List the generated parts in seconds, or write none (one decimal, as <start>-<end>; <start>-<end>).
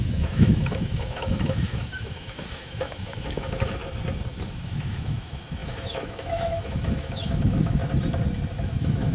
0.0-3.8; 4.3-7.8; 8.5-9.1